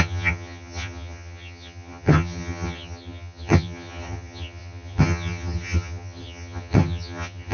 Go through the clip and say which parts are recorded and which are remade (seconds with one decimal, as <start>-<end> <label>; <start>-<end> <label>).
0.0-7.5 remade